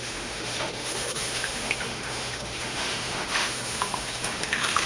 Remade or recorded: remade